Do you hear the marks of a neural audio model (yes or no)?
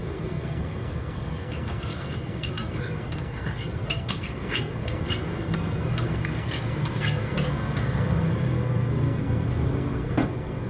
yes